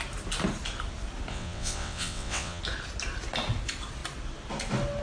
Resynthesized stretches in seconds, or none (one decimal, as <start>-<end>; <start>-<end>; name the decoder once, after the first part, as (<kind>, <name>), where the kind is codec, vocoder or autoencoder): 1.3-2.6 (vocoder, WaveNeXt)